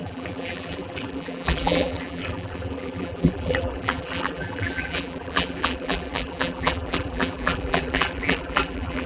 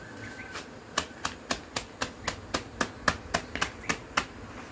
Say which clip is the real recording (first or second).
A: second